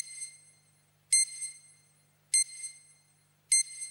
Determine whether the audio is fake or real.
real